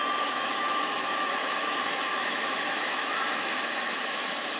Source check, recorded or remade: remade